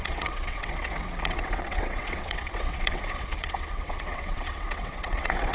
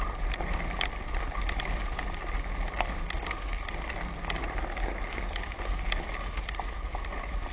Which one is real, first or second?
second